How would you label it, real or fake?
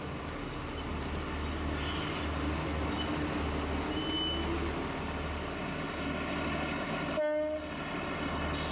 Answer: real